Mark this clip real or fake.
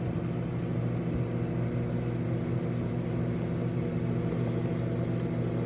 real